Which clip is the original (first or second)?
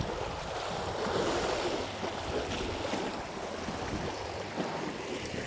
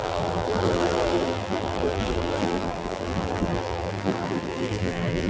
first